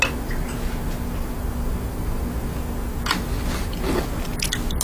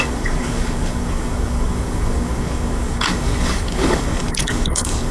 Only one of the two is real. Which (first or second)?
first